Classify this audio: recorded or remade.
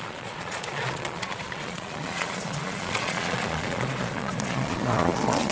remade